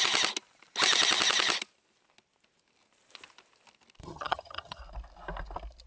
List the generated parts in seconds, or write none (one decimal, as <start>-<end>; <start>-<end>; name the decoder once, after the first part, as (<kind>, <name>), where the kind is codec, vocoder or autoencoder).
4.0-4.8 (vocoder, HiFi-GAN)

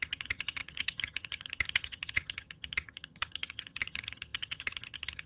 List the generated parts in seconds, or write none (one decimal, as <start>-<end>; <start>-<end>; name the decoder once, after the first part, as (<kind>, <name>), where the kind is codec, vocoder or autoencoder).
0.0-5.3 (vocoder, HiFi-GAN)